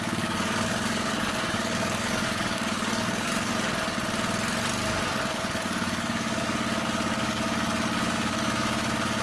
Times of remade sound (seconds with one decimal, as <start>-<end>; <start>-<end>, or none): 0.0-3.5; 5.3-9.2